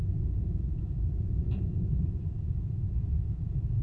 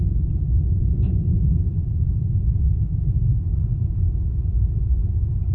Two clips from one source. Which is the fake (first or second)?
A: first